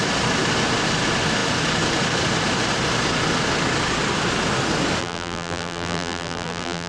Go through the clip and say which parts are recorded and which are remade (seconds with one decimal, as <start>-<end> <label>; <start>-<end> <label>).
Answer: 0.0-5.0 recorded; 5.0-6.9 remade